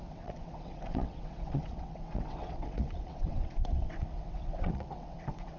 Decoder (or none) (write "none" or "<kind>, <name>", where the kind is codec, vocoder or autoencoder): vocoder, WaveNeXt